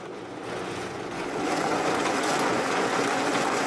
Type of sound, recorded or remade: remade